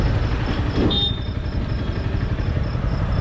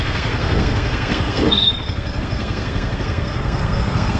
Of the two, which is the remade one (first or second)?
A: second